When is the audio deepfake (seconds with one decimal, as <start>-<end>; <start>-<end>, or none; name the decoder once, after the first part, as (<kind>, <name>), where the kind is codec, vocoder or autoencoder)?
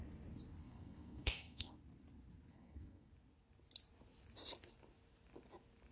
0.6-1.7 (codec, SNAC); 2.5-3.1